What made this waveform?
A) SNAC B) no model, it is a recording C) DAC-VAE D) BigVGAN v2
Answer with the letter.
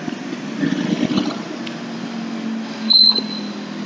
B